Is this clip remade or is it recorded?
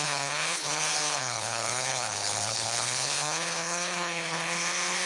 remade